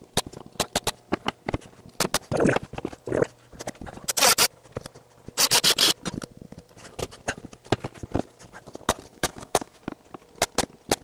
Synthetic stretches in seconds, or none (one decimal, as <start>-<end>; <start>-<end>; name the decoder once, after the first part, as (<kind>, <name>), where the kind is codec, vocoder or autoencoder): 9.1-9.8 (autoencoder, DAC-VAE)